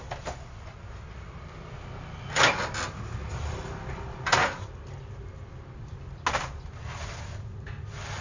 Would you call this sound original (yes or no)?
yes